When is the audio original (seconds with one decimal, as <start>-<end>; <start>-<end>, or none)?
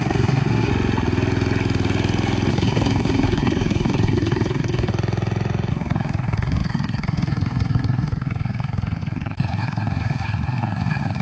0.7-2.5; 4.9-5.7